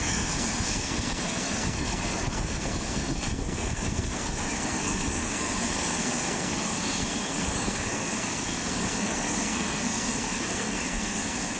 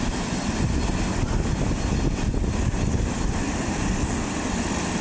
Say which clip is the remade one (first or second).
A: first